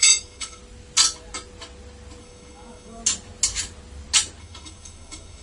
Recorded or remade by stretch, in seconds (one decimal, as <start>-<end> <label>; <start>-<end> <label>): 0.0-0.6 remade; 0.6-2.2 recorded; 2.2-3.0 remade; 3.0-4.4 recorded; 4.4-5.4 remade